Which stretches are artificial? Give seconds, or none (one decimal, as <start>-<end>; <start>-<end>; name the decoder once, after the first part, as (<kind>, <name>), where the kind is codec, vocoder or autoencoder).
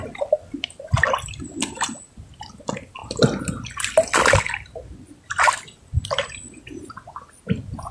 none